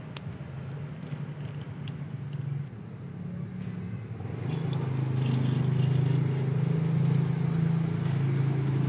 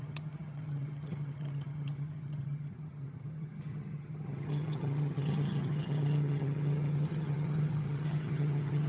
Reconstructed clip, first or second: second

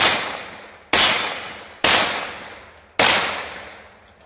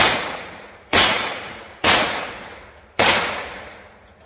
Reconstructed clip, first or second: second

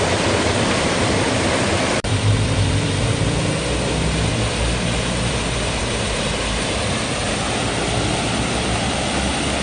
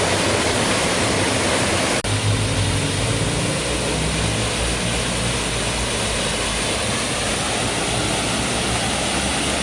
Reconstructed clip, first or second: first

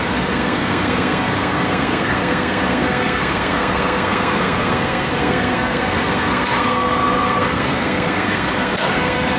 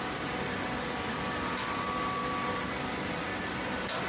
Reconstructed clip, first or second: first